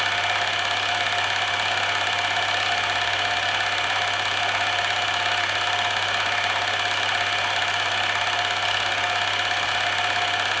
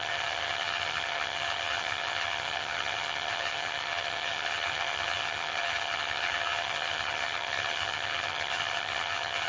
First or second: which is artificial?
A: second